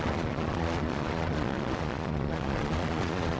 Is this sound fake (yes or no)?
yes